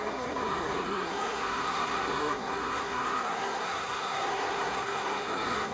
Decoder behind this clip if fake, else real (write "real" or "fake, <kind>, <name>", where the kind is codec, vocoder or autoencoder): fake, codec, SNAC